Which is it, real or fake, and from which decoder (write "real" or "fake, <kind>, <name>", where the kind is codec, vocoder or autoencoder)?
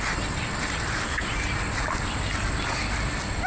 real